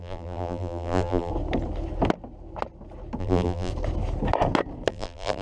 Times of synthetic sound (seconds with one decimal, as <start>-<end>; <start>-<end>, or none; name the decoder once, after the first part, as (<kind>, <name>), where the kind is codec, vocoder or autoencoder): 0.0-1.3 (vocoder, BigVGAN v2); 3.2-3.7; 4.9-5.4